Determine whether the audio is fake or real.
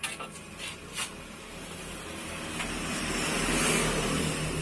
real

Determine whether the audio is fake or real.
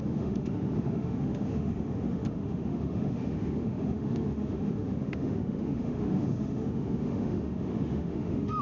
fake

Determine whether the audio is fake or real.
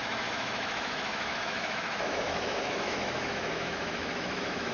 fake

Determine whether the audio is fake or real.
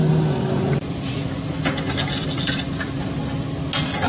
real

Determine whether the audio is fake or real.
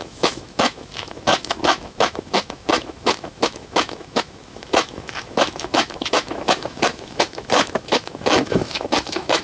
fake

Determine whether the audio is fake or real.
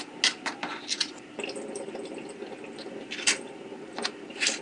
real